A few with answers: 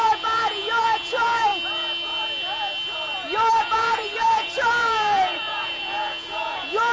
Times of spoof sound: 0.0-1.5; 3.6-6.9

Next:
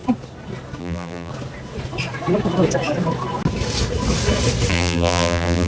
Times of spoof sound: 0.8-1.3; 4.7-5.7

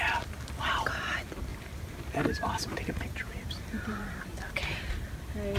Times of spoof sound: 1.5-4.9

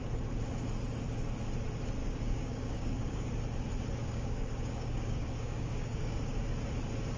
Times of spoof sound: 2.0-3.3; 4.0-6.4

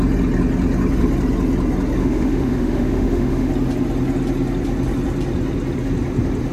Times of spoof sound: 2.0-3.5